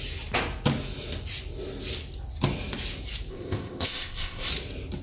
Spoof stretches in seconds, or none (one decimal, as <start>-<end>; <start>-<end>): 3.3-4.5